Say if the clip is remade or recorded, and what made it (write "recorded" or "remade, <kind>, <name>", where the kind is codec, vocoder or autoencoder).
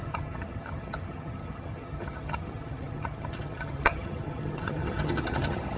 remade, vocoder, HiFi-GAN